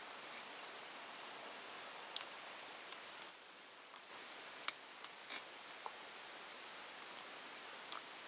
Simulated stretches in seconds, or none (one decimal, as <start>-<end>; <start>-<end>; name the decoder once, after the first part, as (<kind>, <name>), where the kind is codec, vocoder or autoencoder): 3.3-4.1 (vocoder, Vocos)